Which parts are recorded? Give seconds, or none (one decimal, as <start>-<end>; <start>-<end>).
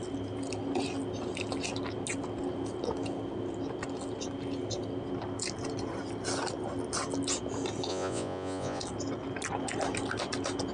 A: 0.0-7.9; 8.8-10.7